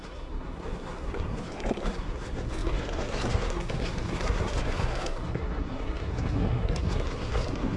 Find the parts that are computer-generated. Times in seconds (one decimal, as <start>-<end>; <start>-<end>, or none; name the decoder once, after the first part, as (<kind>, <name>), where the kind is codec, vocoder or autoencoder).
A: 0.0-7.8 (codec, SNAC)